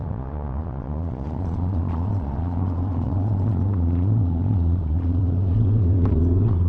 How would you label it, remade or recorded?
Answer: remade